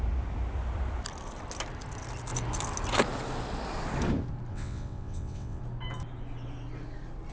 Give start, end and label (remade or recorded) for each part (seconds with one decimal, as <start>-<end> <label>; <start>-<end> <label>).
0.0-4.5 recorded; 4.5-5.6 remade; 5.6-7.3 recorded